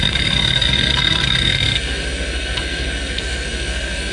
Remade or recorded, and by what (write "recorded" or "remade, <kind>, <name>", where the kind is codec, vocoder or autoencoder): remade, codec, SNAC